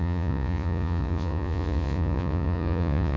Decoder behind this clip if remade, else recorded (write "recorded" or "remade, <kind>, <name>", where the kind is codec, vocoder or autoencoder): remade, vocoder, Vocos